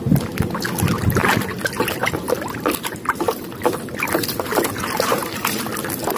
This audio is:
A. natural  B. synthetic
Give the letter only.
A